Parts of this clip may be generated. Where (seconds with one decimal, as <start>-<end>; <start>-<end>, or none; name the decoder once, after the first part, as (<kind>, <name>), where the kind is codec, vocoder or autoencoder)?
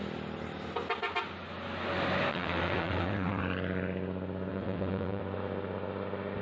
2.3-3.4 (vocoder, WaveNeXt); 4.5-5.2